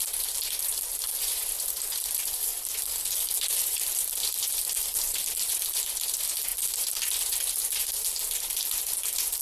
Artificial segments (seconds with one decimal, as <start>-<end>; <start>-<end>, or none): none